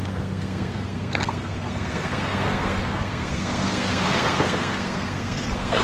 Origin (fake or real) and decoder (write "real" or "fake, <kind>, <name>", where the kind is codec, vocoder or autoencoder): fake, codec, SNAC